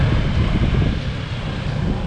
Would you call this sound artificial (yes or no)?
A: no